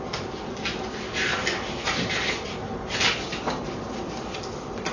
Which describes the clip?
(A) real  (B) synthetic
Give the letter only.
A